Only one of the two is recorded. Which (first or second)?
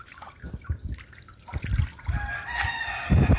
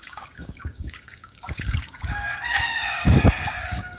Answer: first